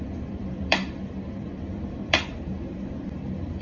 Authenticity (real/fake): fake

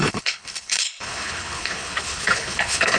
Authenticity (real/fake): fake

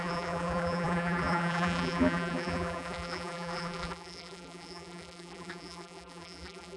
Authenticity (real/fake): fake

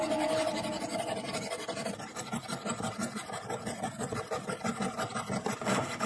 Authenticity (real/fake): real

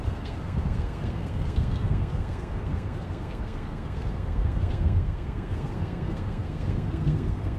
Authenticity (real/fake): fake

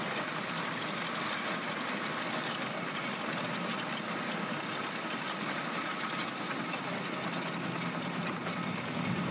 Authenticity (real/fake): real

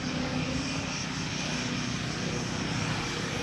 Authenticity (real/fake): fake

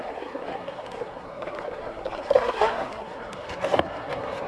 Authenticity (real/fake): fake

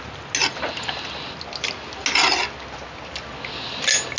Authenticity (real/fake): real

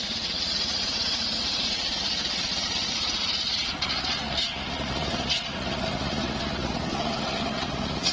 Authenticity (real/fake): fake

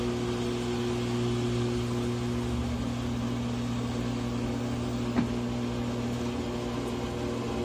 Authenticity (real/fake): real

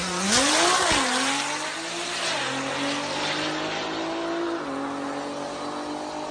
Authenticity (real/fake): real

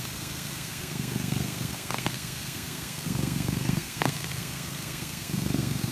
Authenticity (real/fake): fake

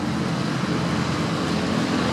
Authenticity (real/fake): real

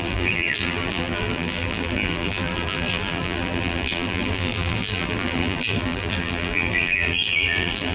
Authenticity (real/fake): fake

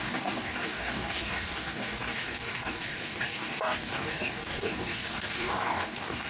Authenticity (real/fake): fake